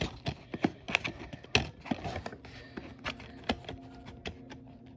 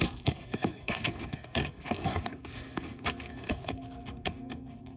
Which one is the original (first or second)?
first